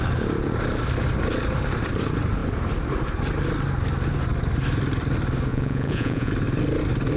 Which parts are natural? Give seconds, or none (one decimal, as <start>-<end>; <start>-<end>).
0.0-5.5; 6.3-7.2